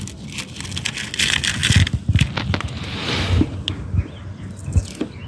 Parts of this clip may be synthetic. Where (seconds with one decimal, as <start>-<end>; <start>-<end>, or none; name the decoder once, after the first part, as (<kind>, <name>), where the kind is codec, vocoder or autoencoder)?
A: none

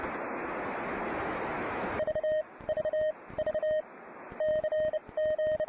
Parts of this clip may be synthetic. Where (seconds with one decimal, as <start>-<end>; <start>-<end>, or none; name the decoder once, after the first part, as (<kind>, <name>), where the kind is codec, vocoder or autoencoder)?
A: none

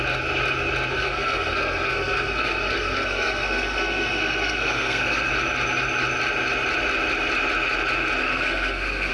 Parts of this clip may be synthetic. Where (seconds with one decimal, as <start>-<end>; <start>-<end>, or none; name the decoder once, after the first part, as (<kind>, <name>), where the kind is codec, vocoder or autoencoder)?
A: 0.9-5.3 (codec, SNAC); 8.2-9.1

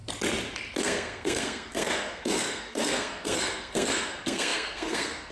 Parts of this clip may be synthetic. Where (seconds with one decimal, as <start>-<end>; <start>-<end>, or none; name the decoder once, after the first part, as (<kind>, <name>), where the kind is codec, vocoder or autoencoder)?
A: 0.8-5.3 (codec, SNAC)